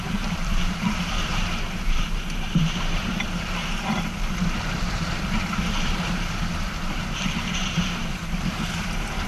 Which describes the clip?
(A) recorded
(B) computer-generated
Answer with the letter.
B